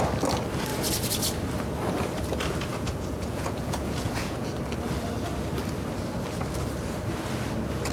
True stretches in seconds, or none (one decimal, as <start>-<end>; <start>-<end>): 0.0-2.7; 4.5-7.9